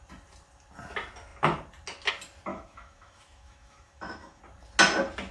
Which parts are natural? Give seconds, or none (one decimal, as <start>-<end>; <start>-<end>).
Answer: 0.0-2.5; 4.4-5.3